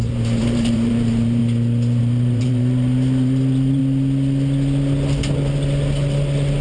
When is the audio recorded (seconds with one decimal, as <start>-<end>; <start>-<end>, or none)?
1.4-2.0; 3.8-6.6